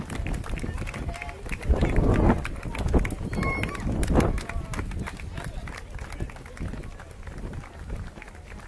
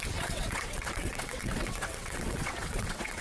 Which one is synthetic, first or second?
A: second